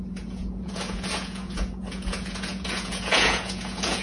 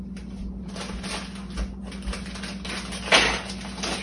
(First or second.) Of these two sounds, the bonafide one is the second